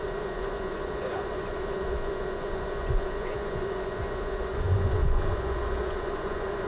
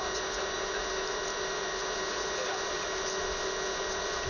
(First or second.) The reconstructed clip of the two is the first